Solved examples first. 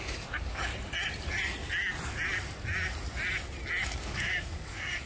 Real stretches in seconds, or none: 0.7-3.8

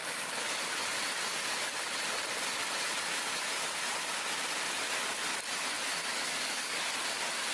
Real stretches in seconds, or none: 0.0-6.0; 6.9-7.5

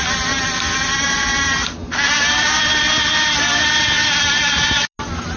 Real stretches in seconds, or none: 0.0-5.4

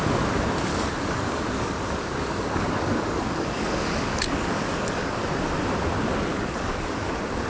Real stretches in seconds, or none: 0.0-0.7; 5.2-6.3; 7.1-7.5

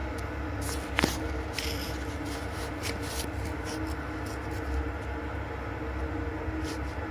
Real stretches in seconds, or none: 0.0-7.1